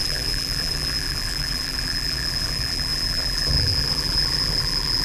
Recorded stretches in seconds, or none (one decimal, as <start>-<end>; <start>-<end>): none